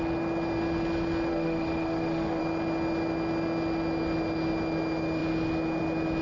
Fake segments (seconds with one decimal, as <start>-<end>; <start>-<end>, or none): 1.3-2.4